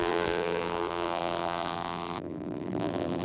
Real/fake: fake